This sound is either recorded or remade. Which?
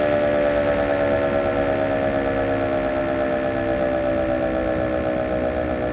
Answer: recorded